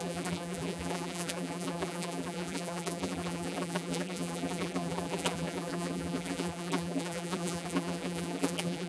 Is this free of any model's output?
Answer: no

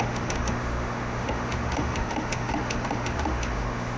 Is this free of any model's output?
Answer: no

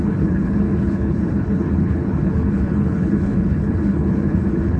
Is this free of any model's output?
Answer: no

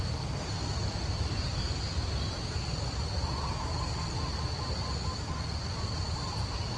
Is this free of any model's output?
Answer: yes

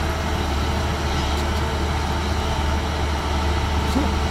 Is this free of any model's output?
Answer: yes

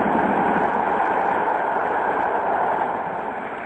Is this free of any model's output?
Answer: yes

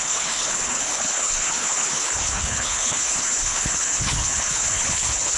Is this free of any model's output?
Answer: no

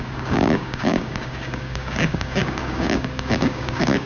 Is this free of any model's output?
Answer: no